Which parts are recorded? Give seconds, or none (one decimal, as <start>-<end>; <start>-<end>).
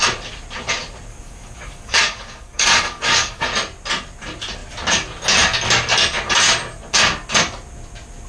0.0-1.1; 3.4-8.3